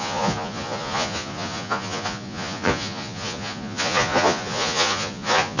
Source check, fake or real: fake